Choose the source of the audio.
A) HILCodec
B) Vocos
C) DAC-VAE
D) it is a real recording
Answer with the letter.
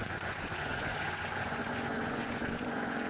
B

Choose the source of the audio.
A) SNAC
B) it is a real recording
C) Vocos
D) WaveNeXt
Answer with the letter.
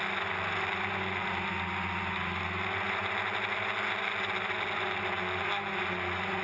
B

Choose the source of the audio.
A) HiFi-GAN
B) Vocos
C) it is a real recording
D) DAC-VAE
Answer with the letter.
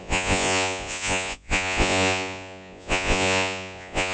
B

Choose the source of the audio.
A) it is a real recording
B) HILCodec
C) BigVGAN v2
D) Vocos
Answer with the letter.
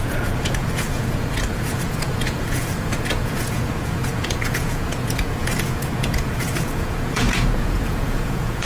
D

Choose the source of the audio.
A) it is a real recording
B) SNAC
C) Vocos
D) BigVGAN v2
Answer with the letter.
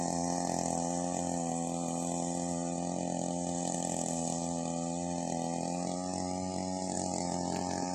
A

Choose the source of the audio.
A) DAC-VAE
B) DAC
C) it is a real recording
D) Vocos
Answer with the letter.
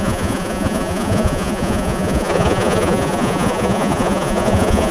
D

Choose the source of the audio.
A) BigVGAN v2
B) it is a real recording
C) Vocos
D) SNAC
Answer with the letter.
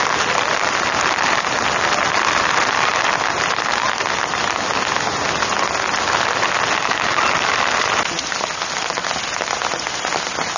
B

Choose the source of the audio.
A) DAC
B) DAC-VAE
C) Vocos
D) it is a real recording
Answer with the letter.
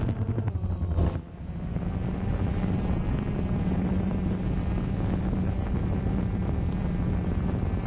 D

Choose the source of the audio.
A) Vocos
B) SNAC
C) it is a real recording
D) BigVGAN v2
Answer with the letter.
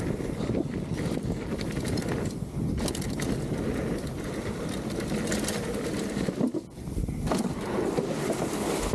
C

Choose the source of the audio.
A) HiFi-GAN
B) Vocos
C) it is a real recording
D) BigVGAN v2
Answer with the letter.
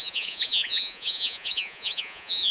B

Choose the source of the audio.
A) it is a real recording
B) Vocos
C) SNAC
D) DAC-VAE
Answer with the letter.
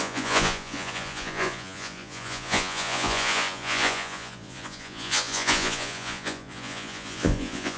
B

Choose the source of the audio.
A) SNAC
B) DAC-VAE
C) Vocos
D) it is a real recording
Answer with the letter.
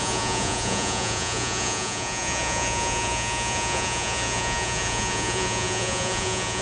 C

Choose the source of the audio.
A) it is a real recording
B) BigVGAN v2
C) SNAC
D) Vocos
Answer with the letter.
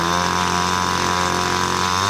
A